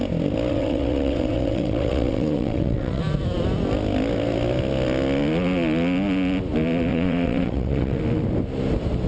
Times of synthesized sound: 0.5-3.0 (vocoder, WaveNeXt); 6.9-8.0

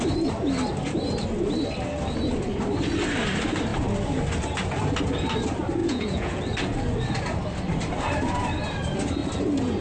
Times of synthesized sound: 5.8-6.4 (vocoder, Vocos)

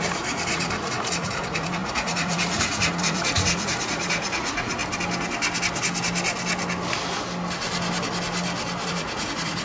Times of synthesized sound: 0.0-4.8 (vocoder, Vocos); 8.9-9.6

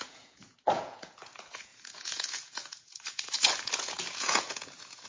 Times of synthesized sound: 0.0-5.1 (vocoder, Vocos)